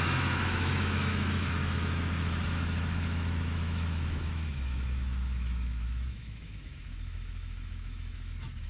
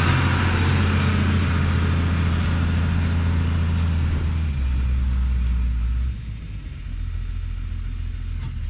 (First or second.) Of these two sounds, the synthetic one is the first